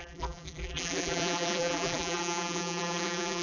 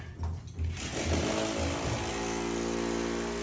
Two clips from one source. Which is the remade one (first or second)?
first